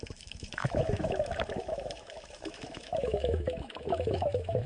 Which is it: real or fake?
fake